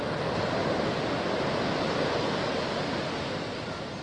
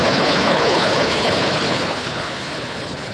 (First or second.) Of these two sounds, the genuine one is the first